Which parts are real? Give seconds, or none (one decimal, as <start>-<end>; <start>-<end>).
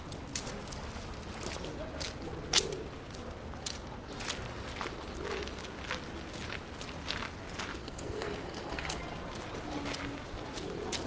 0.0-7.8; 9.0-11.1